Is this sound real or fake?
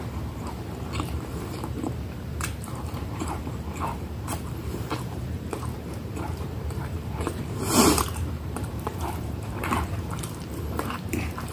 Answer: fake